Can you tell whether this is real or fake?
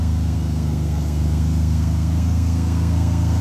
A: fake